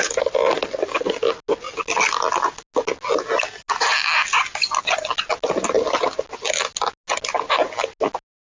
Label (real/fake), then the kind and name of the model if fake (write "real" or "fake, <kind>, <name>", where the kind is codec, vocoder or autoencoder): real